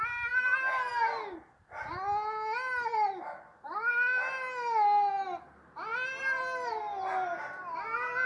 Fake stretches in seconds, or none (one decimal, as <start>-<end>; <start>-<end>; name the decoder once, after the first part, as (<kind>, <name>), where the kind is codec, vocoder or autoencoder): none